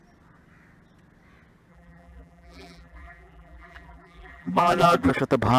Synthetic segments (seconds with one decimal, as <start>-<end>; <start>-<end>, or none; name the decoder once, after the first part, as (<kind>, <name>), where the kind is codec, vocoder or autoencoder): 1.7-5.1 (vocoder, BigVGAN v2)